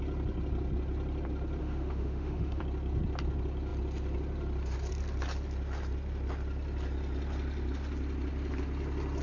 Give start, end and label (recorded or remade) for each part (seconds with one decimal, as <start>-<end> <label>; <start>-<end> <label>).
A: 0.0-1.6 recorded; 1.6-2.6 remade; 2.6-9.2 recorded